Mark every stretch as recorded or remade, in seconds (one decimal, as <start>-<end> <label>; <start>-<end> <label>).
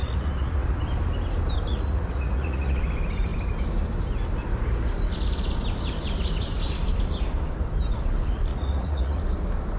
0.0-0.8 remade; 0.8-1.7 recorded; 1.7-2.8 remade; 2.8-8.5 recorded; 8.5-9.2 remade; 9.2-9.8 recorded